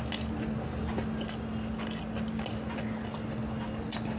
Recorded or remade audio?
recorded